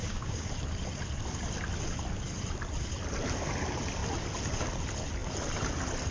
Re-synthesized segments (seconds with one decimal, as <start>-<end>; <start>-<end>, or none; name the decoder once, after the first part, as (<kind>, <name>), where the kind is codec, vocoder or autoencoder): 0.0-0.5 (codec, DAC)